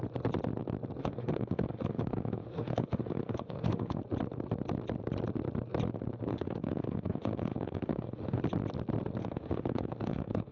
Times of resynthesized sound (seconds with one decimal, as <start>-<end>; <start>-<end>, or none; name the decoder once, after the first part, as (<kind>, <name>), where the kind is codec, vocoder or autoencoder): 1.0-4.0 (autoencoder, DAC-VAE); 6.3-8.4; 9.2-10.5